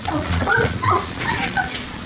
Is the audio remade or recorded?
remade